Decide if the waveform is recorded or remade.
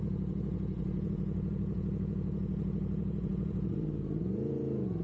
remade